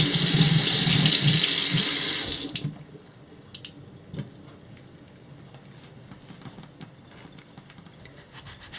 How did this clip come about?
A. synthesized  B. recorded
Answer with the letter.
B